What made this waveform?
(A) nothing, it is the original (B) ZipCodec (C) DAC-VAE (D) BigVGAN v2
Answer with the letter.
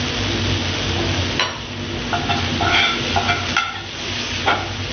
A